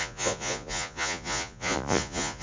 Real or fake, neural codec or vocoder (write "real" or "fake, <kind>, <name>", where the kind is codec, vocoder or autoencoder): fake, vocoder, Vocos